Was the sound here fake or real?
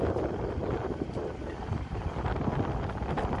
real